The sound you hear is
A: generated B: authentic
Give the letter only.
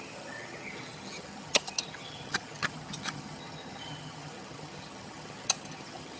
A